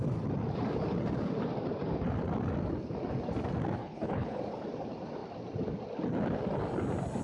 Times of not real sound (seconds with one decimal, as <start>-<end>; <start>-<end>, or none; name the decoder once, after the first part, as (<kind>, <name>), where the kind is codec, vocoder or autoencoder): 3.8-4.4 (codec, HILCodec)